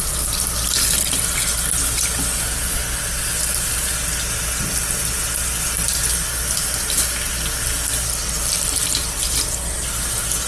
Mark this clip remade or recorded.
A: recorded